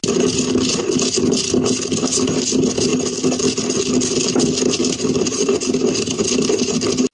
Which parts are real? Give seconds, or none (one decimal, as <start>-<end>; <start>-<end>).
0.0-4.8; 5.5-7.1